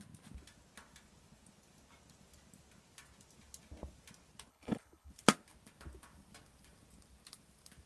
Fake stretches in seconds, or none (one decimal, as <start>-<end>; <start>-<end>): 4.5-5.1